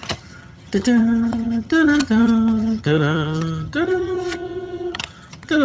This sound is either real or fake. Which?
fake